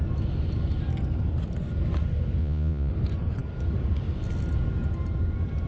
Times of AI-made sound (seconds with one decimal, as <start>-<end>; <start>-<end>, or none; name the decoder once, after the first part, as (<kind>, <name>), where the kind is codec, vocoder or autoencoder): 2.4-2.9 (vocoder, Vocos)